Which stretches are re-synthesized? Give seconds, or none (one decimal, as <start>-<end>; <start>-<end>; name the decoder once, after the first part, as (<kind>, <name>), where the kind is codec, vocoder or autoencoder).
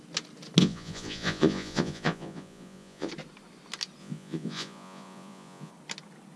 0.6-3.1 (vocoder, Vocos); 4.0-5.7